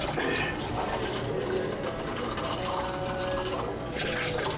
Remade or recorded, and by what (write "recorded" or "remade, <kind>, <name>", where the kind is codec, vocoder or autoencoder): recorded